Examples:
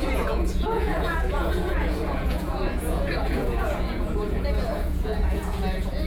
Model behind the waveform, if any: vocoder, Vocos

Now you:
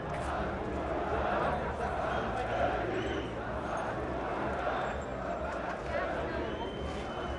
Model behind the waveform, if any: none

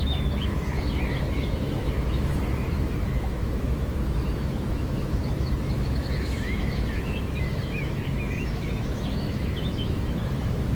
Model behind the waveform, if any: autoencoder, DAC-VAE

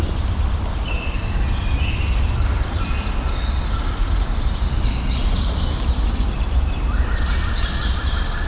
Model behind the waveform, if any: none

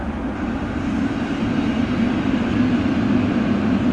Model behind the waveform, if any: none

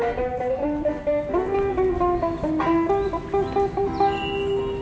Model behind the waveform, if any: none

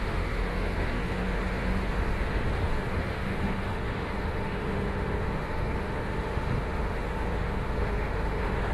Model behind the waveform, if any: autoencoder, DAC-VAE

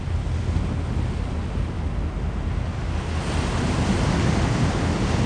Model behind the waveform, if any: none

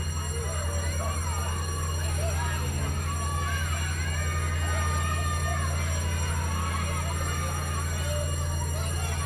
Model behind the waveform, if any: none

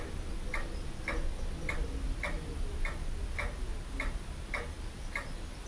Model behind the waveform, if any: none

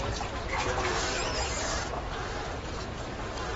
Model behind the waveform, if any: none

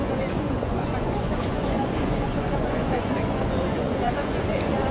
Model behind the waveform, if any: vocoder, Vocos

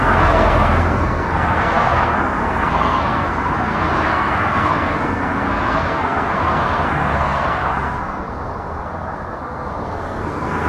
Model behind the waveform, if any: codec, SNAC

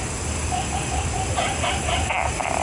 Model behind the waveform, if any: none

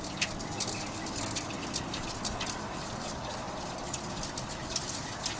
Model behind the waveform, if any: none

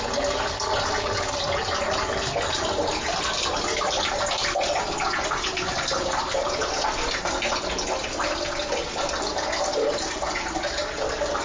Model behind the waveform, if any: none